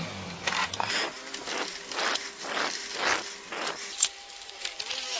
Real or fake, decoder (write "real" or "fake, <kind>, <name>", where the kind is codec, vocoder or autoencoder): real